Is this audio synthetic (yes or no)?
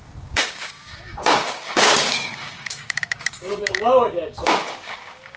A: yes